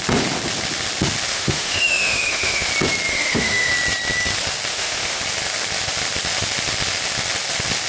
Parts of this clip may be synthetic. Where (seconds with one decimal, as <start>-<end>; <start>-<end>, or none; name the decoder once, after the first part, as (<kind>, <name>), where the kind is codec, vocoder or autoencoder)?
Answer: 1.3-2.7 (autoencoder, DAC-VAE); 3.1-3.7; 4.7-5.2